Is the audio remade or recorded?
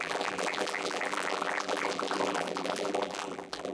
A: remade